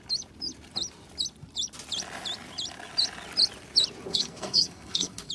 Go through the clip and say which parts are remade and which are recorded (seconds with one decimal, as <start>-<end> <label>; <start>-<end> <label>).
0.0-4.1 recorded; 4.1-5.3 remade